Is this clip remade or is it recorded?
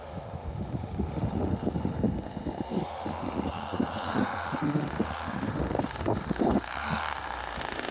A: remade